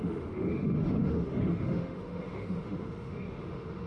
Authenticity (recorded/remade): remade